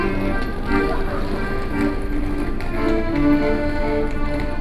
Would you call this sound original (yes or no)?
yes